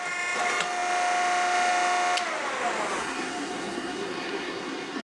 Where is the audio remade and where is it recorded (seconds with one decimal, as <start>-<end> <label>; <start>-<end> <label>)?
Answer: 0.0-3.0 recorded; 3.0-5.0 remade

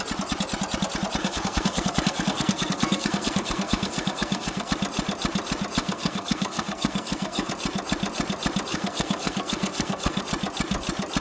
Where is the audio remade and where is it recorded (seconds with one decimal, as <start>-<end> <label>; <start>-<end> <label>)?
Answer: 0.0-1.2 recorded; 1.2-4.7 remade; 4.7-5.8 recorded; 5.8-7.5 remade; 7.5-8.7 recorded; 8.7-10.2 remade; 10.2-11.2 recorded

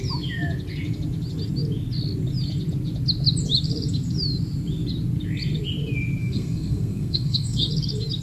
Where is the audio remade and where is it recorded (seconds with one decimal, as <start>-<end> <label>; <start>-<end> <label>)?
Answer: 0.0-6.2 recorded; 6.2-7.7 remade; 7.7-8.2 recorded

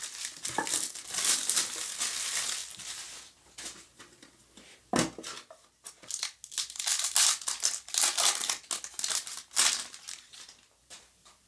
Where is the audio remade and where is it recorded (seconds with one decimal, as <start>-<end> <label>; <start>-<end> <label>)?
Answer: 0.0-11.5 recorded

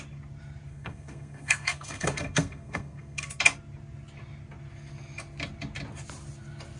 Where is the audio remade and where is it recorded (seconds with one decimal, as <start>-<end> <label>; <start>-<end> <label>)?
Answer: 0.0-0.7 recorded; 0.7-3.4 remade; 3.4-6.8 recorded